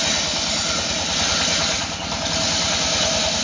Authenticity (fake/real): real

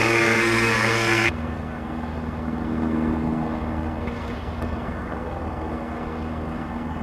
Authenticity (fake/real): fake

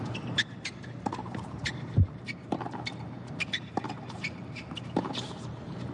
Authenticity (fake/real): fake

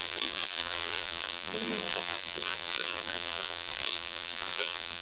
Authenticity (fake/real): fake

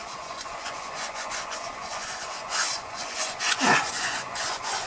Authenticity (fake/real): fake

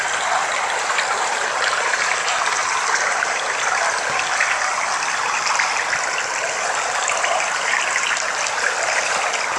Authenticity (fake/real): real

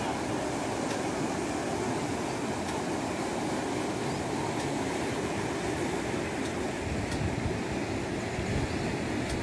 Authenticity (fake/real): real